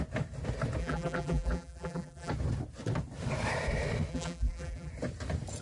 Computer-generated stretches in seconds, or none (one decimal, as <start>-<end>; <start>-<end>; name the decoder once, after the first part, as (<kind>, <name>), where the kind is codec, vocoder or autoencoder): 0.8-2.3 (vocoder, BigVGAN v2); 4.1-4.9